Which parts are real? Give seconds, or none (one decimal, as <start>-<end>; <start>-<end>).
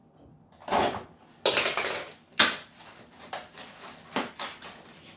0.0-5.2